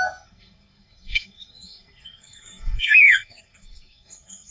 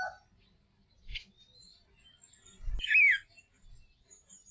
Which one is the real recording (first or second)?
second